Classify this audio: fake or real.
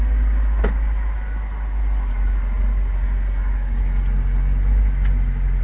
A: real